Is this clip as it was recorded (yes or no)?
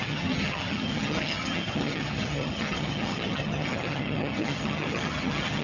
no